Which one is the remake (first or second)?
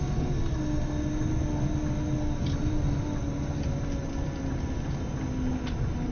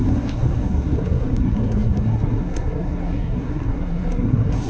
second